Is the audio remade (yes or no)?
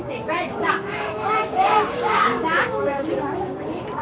yes